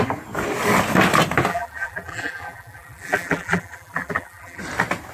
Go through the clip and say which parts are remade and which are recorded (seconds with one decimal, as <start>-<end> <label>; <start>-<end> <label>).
0.0-1.5 recorded; 1.5-4.6 remade; 4.6-5.1 recorded

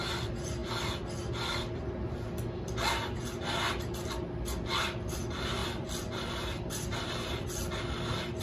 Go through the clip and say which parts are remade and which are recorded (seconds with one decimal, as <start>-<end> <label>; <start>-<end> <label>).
0.0-5.6 recorded; 5.6-7.5 remade; 7.5-8.4 recorded

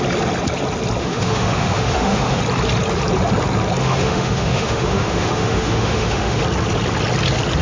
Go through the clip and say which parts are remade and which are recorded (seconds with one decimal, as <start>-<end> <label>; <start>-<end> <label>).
0.0-1.0 recorded; 1.0-2.4 remade; 2.4-3.8 recorded; 3.8-6.4 remade; 6.4-7.6 recorded

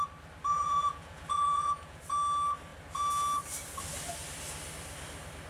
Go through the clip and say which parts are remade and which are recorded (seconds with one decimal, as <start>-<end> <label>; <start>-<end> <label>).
0.0-0.5 recorded; 0.5-2.0 remade; 2.0-5.5 recorded

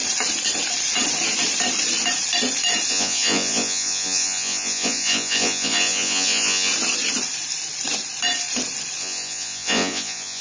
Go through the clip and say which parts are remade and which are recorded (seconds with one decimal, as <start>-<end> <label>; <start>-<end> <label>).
0.0-2.9 recorded; 2.9-6.7 remade; 6.7-9.0 recorded; 9.0-10.4 remade